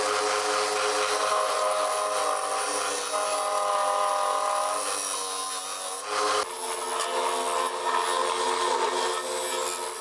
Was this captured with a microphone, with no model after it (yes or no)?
yes